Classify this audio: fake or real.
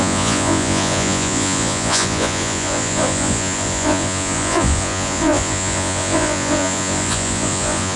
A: fake